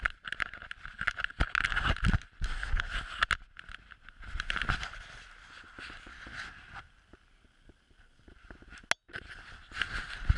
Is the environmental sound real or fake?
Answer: real